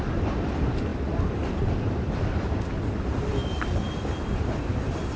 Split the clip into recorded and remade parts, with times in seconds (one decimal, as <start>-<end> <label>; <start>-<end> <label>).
0.0-3.4 remade; 3.4-5.2 recorded